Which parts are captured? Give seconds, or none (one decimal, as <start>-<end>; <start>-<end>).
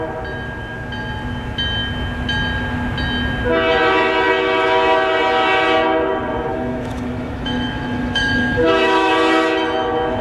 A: 0.0-6.5; 9.1-10.2